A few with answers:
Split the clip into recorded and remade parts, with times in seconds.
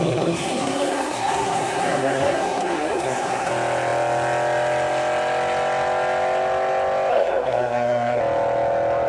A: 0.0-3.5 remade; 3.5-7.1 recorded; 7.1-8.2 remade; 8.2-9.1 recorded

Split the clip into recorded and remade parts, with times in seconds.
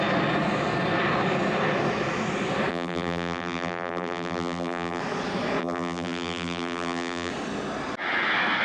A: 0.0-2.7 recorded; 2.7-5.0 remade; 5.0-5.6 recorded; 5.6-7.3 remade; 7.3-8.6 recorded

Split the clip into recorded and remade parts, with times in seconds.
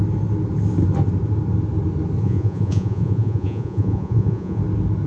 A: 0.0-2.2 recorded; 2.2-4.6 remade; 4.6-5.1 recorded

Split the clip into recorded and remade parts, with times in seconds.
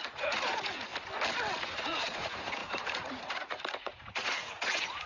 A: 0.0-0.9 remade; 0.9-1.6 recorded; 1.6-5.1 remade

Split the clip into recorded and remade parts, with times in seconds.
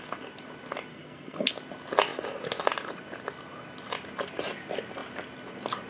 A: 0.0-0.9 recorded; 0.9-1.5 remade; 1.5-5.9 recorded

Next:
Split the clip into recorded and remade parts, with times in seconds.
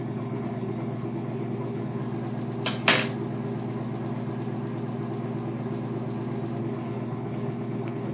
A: 0.0-2.0 remade; 2.0-6.6 recorded; 6.6-8.1 remade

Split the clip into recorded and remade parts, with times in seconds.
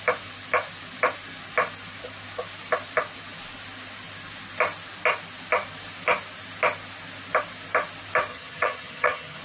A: 0.0-8.3 recorded; 8.3-9.4 remade